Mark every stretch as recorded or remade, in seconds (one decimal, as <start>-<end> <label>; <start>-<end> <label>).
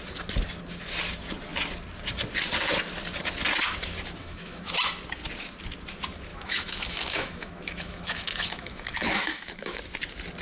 0.0-4.2 recorded; 4.2-4.9 remade; 4.9-6.3 recorded; 6.3-9.8 remade; 9.8-10.4 recorded